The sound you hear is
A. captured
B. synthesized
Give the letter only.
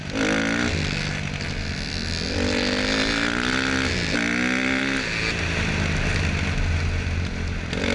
A